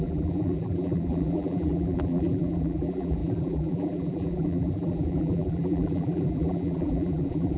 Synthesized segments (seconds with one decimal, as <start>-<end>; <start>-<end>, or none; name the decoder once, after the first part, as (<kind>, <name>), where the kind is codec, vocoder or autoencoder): 0.0-7.6 (vocoder, BigVGAN v2)